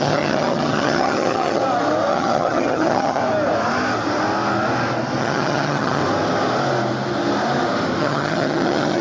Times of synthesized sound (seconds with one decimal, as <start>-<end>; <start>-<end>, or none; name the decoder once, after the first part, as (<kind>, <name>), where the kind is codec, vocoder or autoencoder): 0.0-1.6 (vocoder, HiFi-GAN); 2.1-3.2; 5.2-6.0; 8.0-9.0